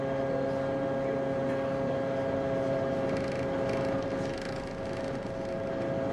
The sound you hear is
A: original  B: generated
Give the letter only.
A